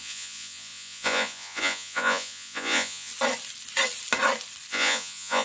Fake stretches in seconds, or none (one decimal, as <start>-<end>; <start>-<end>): 0.0-3.1; 4.7-5.4